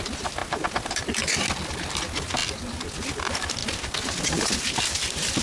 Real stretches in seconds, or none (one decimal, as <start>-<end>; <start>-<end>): 0.0-5.4